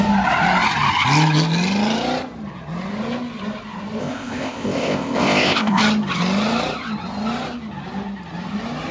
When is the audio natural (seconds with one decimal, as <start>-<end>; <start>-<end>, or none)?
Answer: 0.0-4.0; 5.8-8.9

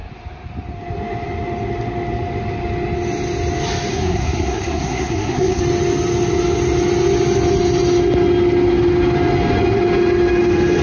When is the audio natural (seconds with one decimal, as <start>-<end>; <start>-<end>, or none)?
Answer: 0.0-3.9; 5.6-10.8

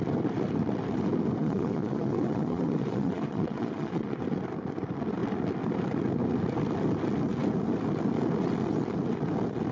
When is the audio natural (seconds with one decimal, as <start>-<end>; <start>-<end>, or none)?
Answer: 0.0-1.4; 4.2-9.7

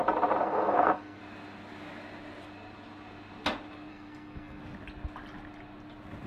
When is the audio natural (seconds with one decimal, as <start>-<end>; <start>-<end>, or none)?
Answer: 0.0-0.4; 1.2-3.9; 4.6-6.3

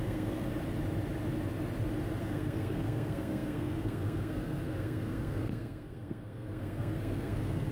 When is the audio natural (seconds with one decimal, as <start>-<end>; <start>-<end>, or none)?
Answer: 0.5-2.2

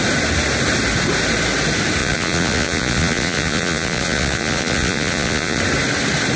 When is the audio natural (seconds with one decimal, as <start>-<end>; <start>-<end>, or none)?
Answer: 0.0-2.0; 5.6-6.4